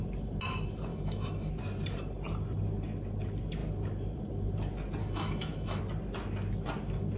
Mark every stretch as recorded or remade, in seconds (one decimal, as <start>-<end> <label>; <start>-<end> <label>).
0.0-0.9 recorded; 0.9-1.5 remade; 1.5-5.0 recorded; 5.0-5.8 remade; 5.8-7.2 recorded